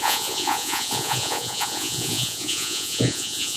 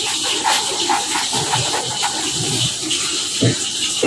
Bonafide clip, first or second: second